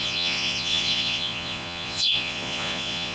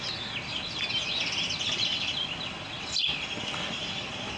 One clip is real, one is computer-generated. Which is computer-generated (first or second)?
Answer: first